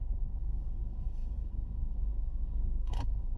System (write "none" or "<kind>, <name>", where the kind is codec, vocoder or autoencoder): codec, SNAC